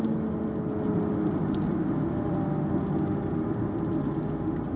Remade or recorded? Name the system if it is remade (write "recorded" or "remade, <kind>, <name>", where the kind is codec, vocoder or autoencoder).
recorded